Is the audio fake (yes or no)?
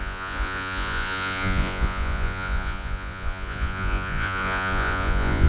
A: yes